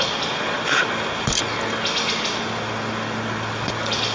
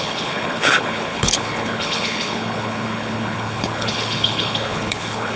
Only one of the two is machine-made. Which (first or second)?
second